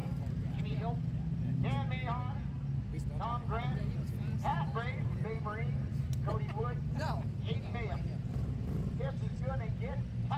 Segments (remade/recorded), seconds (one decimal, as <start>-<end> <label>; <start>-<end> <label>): 0.0-0.6 remade; 0.6-4.5 recorded; 4.5-9.7 remade; 9.7-10.4 recorded